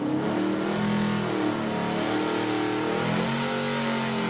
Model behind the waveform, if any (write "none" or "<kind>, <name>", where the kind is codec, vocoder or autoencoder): none